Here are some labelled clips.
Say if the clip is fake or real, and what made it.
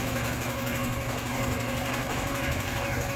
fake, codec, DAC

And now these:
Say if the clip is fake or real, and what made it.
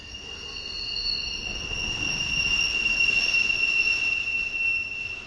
real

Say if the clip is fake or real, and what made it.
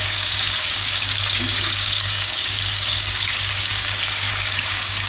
fake, codec, DAC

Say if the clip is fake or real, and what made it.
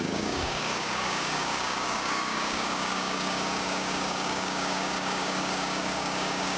fake, codec, DAC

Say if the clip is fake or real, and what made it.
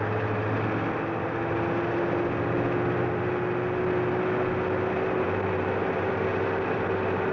real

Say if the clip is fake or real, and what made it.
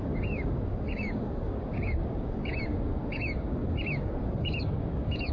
fake, codec, DAC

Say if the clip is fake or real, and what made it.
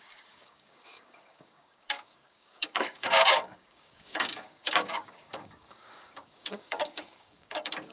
fake, codec, DAC